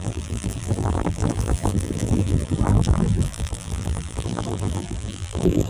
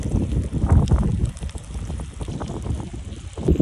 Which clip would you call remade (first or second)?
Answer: first